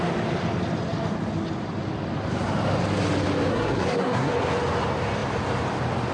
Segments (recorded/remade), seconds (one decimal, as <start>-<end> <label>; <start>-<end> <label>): 0.0-3.5 recorded; 3.5-4.3 remade; 4.3-6.1 recorded